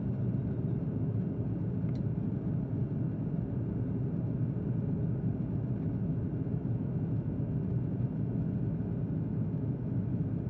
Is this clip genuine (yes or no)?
yes